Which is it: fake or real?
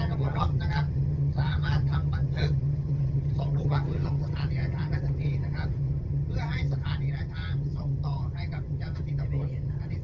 fake